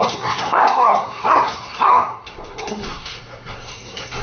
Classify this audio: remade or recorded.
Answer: remade